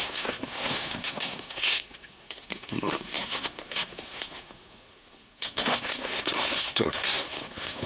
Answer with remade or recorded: remade